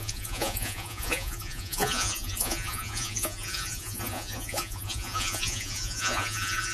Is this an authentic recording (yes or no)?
no